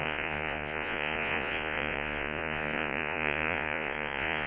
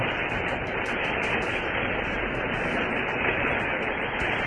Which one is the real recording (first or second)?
second